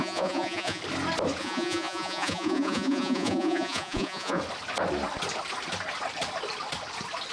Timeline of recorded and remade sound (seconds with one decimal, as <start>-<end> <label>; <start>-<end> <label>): 0.0-0.8 remade; 0.8-1.4 recorded; 1.4-4.4 remade; 4.4-7.3 recorded